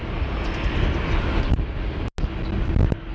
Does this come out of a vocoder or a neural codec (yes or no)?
no